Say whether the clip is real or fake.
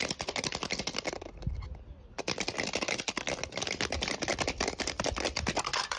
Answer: real